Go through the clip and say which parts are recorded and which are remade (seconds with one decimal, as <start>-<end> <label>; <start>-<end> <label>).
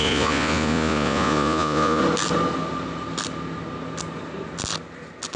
0.0-2.0 remade; 2.0-5.4 recorded